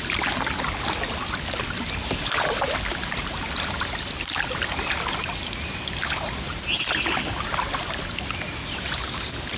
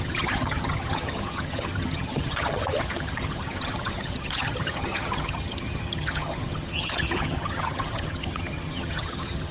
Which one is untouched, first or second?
first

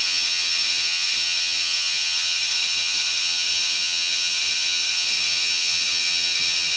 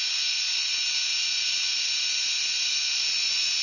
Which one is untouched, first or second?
second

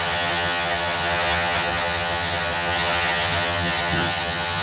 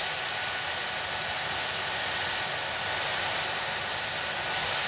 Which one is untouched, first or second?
second